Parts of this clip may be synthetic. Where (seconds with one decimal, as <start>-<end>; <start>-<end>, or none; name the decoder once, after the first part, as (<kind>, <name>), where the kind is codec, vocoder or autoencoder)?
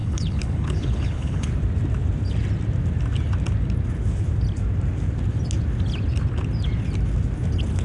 0.0-1.5 (codec, HILCodec)